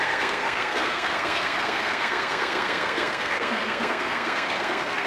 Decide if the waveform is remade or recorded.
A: remade